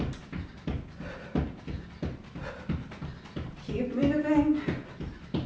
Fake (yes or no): no